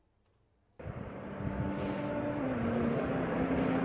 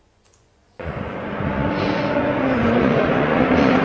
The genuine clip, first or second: first